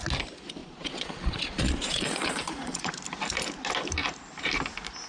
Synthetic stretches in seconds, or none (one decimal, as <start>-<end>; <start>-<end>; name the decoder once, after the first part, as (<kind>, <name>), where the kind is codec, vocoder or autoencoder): 0.6-2.9 (vocoder, Vocos)